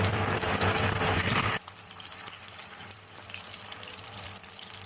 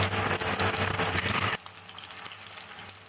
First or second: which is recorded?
second